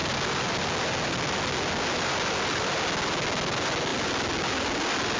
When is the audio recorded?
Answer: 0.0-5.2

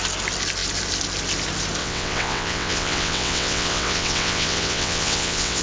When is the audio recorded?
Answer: 0.0-1.8

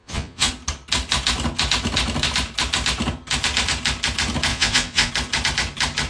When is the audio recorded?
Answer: 0.5-4.5; 5.1-6.1

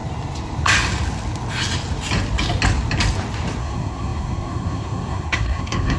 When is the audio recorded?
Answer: 0.0-3.6

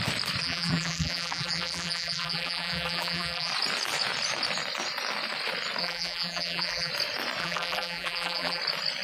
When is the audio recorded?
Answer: 0.0-0.4; 3.5-5.8; 6.9-7.4; 8.6-9.0

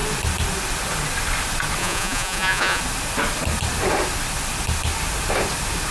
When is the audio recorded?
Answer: 0.0-1.8; 2.8-5.9